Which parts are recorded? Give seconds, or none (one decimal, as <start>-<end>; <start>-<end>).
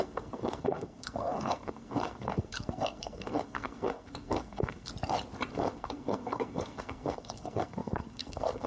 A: 4.9-5.5